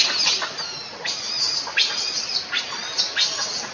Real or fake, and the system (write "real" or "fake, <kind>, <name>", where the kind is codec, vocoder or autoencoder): real